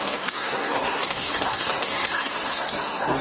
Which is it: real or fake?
fake